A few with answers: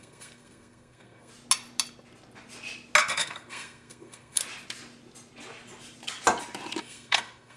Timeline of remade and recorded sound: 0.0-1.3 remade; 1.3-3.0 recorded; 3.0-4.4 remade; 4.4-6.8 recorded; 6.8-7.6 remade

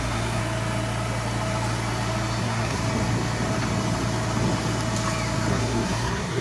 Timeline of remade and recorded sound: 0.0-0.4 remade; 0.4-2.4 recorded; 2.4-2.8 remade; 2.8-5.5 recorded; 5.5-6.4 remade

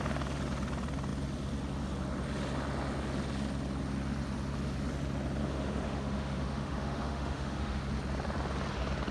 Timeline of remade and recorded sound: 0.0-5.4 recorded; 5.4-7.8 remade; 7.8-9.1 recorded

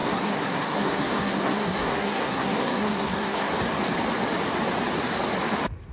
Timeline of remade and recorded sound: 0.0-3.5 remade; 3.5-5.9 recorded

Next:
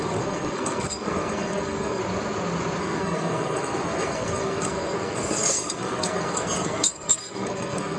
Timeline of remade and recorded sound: 0.0-2.0 remade; 2.0-2.8 recorded; 2.8-8.0 remade

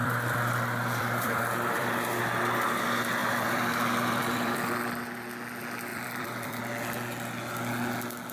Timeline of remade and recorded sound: 0.0-2.2 remade; 2.2-3.2 recorded; 3.2-4.7 remade; 4.7-5.9 recorded; 5.9-6.6 remade; 6.6-8.3 recorded